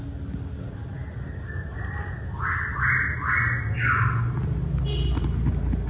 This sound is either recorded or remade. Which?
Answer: recorded